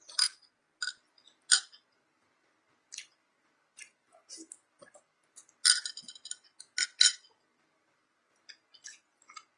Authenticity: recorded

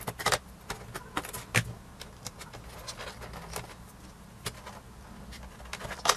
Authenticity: recorded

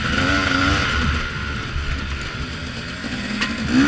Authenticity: recorded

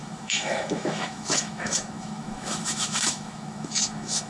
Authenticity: remade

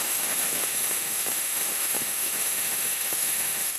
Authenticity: remade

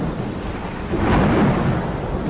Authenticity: remade